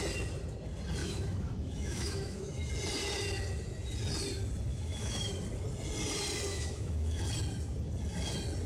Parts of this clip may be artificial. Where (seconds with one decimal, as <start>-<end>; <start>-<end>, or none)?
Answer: 1.0-2.7; 4.7-5.3; 6.5-7.2